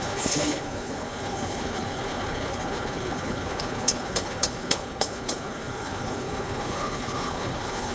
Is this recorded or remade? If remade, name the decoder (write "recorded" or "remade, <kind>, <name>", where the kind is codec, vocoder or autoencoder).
remade, codec, HILCodec